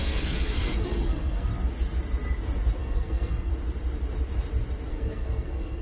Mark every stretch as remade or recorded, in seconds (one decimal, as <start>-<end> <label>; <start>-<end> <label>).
0.0-1.5 remade; 1.5-2.8 recorded; 2.8-3.5 remade; 3.5-4.9 recorded; 4.9-5.8 remade